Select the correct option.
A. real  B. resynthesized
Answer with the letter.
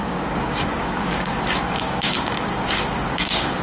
B